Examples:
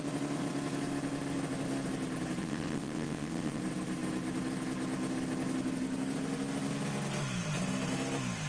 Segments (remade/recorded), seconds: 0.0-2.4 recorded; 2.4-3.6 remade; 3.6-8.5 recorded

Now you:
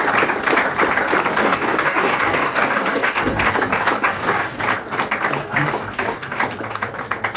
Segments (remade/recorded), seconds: 0.0-1.4 recorded; 1.4-4.6 remade; 4.6-5.4 recorded; 5.4-6.4 remade; 6.4-7.4 recorded

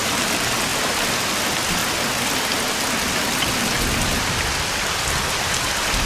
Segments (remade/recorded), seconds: 0.0-6.1 recorded

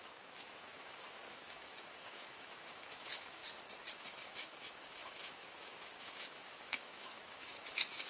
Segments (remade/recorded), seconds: 0.0-3.4 remade; 3.4-4.0 recorded; 4.0-8.1 remade

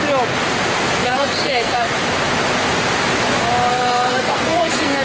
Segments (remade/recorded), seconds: 0.0-1.0 recorded; 1.0-1.9 remade; 1.9-3.7 recorded; 3.7-5.0 remade